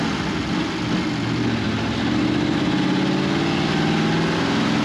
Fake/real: real